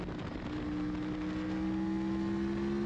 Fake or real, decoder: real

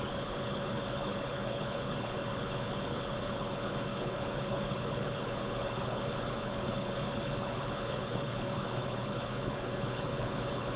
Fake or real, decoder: fake, codec, HILCodec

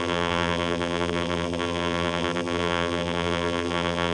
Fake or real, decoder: fake, vocoder, BigVGAN v2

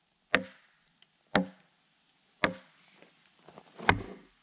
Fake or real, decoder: real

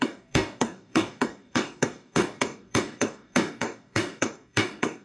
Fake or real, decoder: fake, codec, DAC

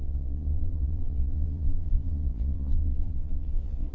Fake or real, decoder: fake, vocoder, Vocos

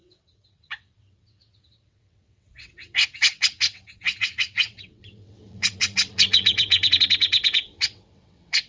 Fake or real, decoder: fake, vocoder, WaveNeXt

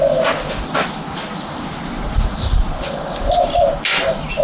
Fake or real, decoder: real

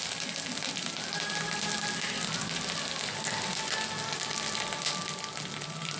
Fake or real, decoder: real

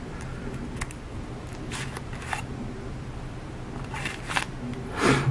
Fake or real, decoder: real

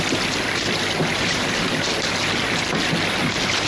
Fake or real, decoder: real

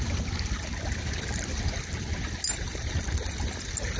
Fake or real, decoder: real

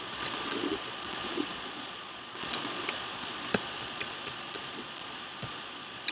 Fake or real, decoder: fake, vocoder, Vocos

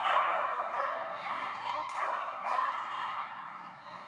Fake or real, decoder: fake, codec, SNAC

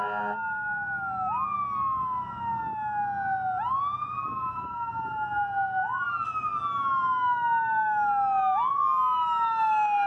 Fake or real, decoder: real